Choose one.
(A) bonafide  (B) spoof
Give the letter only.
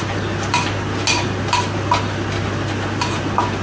A